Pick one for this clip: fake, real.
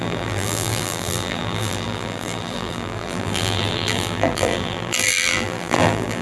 fake